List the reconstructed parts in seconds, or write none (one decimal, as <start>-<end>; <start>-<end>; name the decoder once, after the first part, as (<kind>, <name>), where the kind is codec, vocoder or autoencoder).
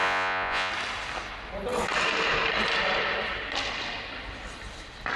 0.0-0.7 (vocoder, Vocos)